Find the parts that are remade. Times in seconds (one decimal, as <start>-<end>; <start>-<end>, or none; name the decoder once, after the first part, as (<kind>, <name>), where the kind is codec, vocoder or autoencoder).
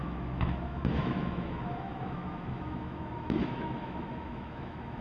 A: 0.0-5.0 (autoencoder, DAC-VAE)